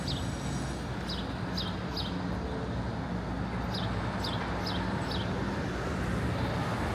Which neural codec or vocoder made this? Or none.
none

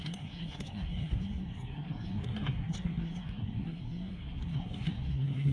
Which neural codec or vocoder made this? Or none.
codec, SNAC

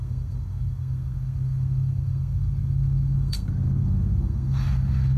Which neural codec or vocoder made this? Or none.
codec, SNAC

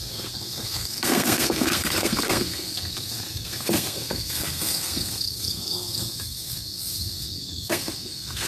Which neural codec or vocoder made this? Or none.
codec, SNAC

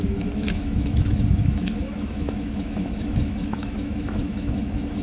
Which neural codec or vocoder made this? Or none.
autoencoder, DAC-VAE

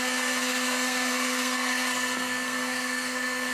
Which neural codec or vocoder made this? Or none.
codec, SNAC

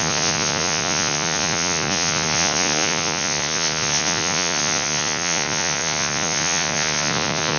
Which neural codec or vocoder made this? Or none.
vocoder, Vocos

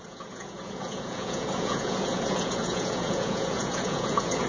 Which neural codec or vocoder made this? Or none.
vocoder, Vocos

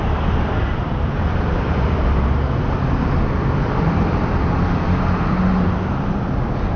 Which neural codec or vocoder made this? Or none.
none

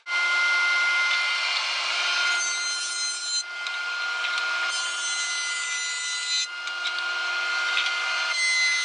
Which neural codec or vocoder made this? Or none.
none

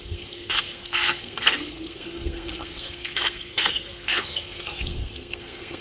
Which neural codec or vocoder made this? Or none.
codec, SNAC